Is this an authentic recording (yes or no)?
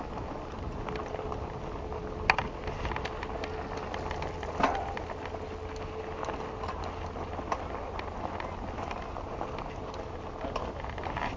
yes